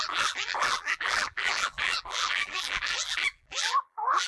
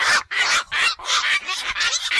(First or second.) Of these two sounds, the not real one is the first